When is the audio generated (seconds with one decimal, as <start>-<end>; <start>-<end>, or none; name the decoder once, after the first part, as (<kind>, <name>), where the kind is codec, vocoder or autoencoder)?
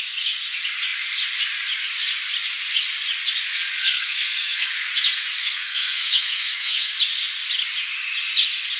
3.8-4.7 (codec, SNAC); 5.4-6.9